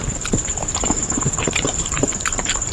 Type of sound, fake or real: fake